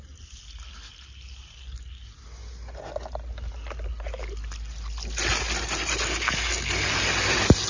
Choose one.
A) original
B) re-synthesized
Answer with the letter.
A